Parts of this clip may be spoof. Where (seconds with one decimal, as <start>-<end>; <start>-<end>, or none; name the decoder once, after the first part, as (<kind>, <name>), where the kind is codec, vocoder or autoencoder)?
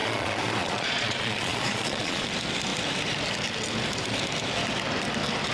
0.0-2.3 (vocoder, Vocos)